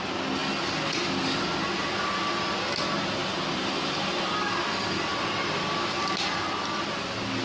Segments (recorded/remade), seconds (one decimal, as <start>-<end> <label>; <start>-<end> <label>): 0.0-3.2 recorded; 3.2-4.6 remade; 4.6-7.4 recorded